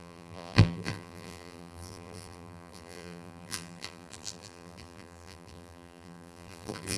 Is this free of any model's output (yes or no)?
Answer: no